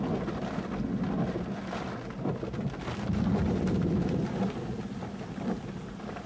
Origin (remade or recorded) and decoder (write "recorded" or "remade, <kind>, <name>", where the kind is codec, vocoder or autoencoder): recorded